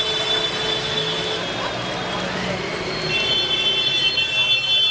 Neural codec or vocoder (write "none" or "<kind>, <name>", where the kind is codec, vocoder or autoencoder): none